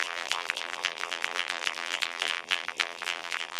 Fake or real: fake